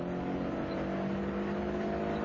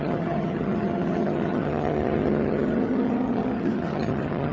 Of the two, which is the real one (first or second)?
first